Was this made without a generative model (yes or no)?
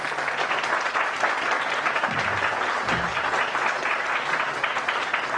yes